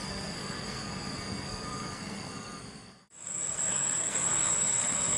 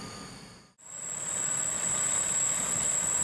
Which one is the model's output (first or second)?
first